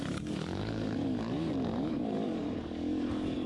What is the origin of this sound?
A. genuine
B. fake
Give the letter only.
B